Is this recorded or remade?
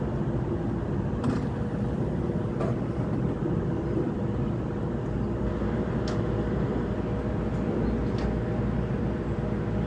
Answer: recorded